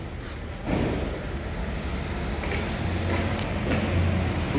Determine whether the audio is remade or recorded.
recorded